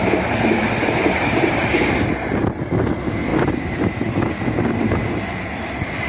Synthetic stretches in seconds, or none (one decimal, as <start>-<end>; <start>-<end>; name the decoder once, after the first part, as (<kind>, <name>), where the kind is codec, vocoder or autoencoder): none